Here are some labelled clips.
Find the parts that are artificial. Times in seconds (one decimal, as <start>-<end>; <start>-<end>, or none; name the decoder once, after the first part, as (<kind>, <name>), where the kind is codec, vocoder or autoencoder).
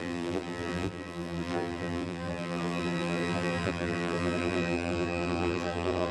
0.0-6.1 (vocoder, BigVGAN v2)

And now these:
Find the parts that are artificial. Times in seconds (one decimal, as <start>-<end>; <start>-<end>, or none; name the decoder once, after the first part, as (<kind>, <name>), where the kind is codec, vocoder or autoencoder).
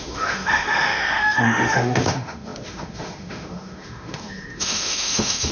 0.0-5.5 (autoencoder, DAC-VAE)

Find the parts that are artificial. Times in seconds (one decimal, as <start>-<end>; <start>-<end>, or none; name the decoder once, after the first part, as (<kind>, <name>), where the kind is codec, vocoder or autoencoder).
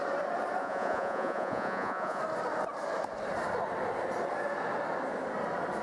0.6-2.2 (vocoder, Vocos)